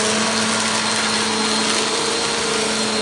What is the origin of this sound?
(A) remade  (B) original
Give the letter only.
B